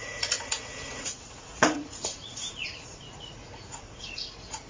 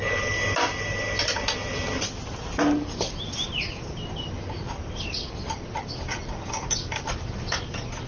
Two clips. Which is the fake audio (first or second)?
first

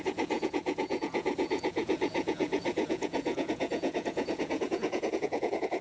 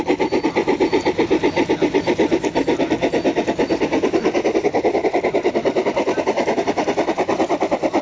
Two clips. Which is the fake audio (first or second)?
first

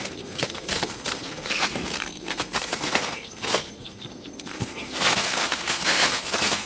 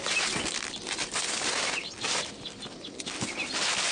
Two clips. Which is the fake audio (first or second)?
first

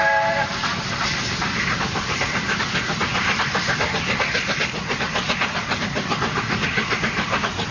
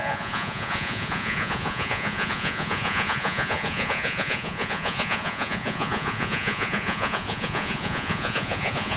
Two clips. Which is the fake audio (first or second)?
second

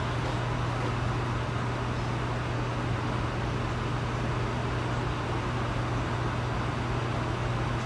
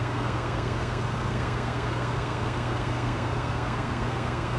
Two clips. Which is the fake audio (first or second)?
second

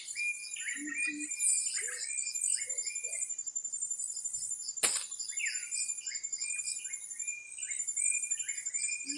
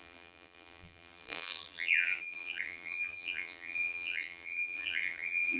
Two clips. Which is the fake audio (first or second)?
second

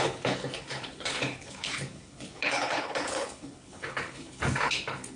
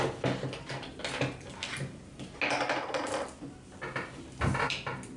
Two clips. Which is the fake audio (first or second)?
first